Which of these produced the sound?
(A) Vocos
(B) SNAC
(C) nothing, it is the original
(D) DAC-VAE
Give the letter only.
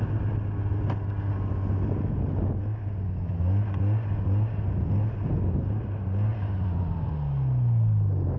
C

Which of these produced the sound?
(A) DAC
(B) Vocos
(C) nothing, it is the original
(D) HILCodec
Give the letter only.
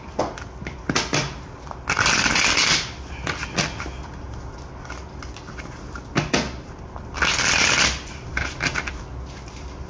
C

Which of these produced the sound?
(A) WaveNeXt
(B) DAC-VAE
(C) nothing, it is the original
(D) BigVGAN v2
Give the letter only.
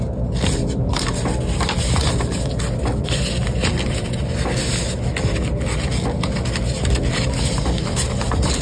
C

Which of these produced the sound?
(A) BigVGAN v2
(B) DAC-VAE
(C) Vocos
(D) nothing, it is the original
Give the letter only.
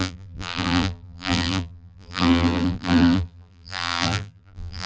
A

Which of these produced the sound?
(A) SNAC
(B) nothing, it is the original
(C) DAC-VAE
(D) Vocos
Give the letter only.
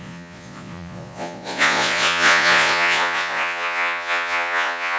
D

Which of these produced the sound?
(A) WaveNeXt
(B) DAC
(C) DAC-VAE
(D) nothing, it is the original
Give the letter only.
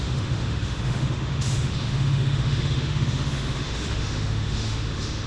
C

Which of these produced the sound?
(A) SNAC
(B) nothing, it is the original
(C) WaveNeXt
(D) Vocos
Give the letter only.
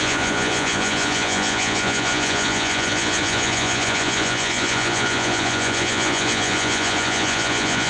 D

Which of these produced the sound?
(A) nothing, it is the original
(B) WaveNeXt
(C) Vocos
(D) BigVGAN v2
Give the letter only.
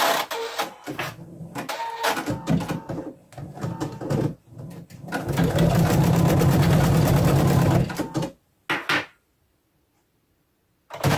A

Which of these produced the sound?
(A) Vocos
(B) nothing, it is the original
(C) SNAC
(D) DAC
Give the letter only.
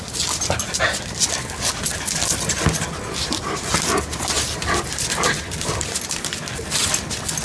B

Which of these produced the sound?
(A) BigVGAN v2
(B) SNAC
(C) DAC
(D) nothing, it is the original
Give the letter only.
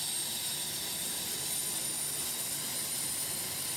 D